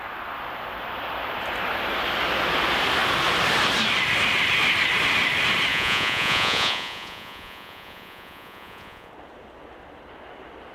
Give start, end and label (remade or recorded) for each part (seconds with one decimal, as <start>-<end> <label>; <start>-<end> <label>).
0.0-5.7 recorded; 5.7-9.1 remade; 9.1-10.7 recorded